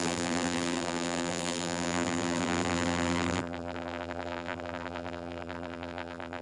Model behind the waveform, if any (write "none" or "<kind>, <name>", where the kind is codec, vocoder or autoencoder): vocoder, BigVGAN v2